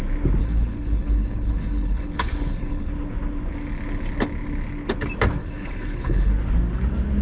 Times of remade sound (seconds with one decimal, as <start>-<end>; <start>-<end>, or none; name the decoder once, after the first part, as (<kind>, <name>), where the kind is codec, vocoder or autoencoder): 0.4-2.9 (codec, HILCodec); 5.4-6.3